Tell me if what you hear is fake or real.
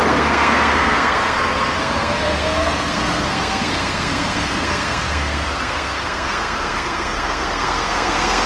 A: fake